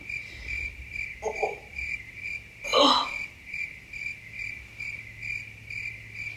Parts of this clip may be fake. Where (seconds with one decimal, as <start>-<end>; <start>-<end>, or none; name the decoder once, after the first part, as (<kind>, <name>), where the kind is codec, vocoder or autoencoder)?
none